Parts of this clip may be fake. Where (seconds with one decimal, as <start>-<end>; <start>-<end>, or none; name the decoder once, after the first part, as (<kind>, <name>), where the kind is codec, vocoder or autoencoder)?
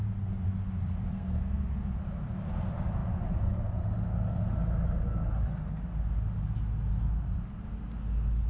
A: 1.1-1.7 (codec, SNAC)